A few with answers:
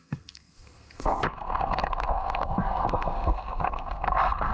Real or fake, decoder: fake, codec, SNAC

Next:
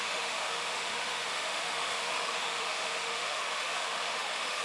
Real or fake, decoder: fake, autoencoder, DAC-VAE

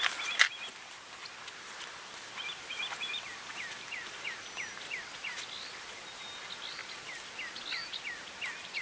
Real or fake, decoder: real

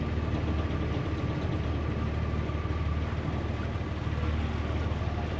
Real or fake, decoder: real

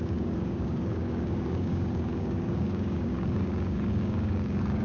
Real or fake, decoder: fake, codec, DAC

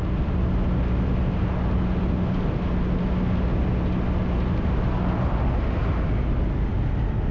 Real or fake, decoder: real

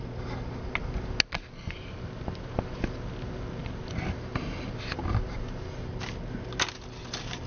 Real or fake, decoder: real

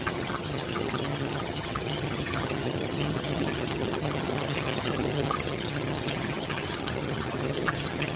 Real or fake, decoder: fake, vocoder, HiFi-GAN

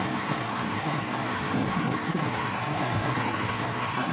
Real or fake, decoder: fake, codec, SNAC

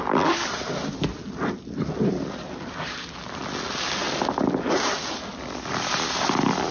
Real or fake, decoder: real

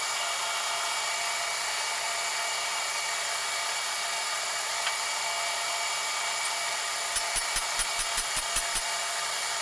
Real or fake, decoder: real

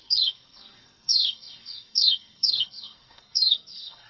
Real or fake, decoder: fake, codec, SNAC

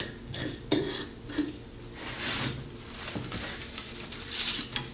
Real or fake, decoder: real